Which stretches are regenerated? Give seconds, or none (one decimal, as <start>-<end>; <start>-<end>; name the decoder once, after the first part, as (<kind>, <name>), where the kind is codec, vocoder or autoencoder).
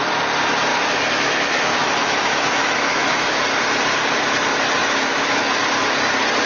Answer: 0.7-3.3 (autoencoder, DAC-VAE); 4.8-5.6